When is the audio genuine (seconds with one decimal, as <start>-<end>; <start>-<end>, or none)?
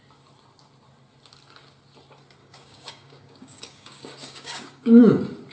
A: 0.0-2.4; 5.0-5.5